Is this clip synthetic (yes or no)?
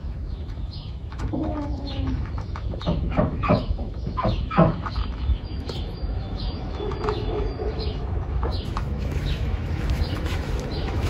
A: yes